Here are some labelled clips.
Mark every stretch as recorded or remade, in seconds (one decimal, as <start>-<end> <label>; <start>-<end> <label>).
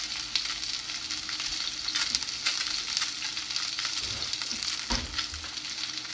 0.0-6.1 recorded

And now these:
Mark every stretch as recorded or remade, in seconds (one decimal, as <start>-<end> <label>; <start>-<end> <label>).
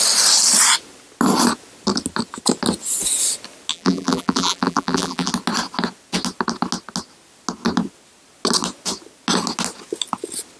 0.0-3.7 recorded; 3.7-5.3 remade; 5.3-10.6 recorded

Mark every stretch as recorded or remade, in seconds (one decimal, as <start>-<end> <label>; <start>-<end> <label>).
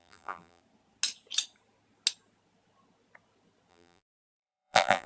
0.0-0.6 remade; 0.6-3.7 recorded; 3.7-5.1 remade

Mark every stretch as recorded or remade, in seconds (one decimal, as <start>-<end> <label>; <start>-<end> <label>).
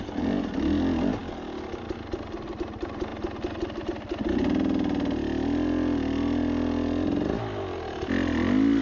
0.0-8.8 recorded